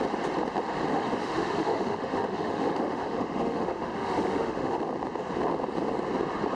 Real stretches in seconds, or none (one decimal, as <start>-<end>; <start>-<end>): 0.0-0.9; 4.8-6.5